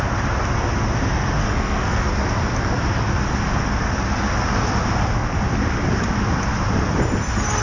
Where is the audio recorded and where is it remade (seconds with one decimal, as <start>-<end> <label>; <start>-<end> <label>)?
0.0-1.4 recorded; 1.4-2.1 remade; 2.1-7.6 recorded